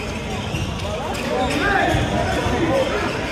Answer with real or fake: real